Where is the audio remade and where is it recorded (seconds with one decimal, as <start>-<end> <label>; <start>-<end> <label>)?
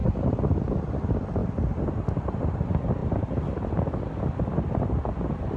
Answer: 0.0-0.9 remade; 0.9-5.6 recorded